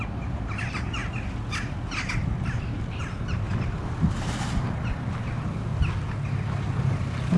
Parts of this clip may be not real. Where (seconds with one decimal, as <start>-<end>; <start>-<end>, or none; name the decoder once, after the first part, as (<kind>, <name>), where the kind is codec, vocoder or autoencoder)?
0.0-1.0 (vocoder, BigVGAN v2); 2.1-5.7; 7.0-7.4